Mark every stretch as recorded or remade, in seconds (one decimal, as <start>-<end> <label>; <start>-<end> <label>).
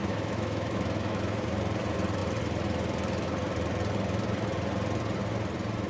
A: 0.0-1.6 remade; 1.6-5.9 recorded